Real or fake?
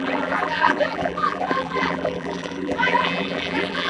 fake